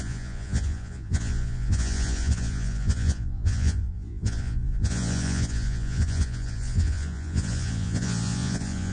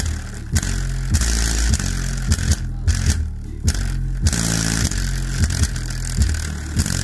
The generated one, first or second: first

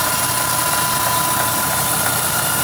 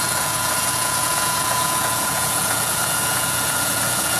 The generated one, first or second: second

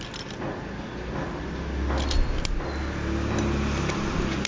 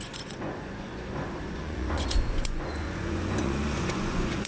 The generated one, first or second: second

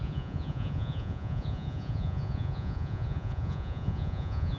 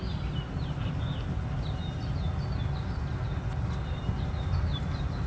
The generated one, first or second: first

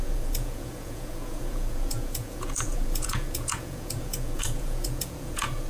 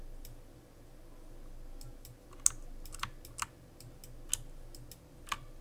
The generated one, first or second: first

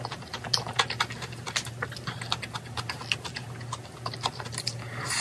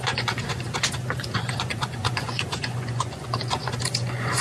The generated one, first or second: second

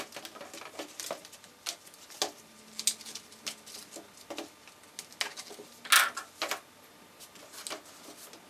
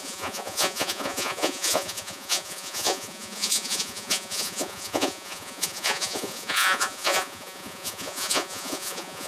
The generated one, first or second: second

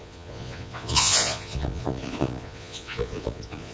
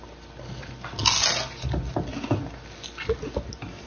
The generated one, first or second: first